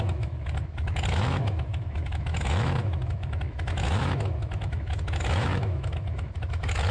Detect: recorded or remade remade